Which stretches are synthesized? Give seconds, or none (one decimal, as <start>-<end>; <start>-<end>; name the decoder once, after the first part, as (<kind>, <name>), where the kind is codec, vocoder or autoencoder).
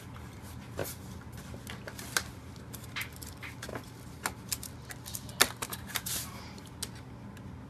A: none